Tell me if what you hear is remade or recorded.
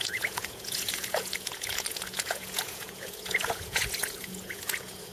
remade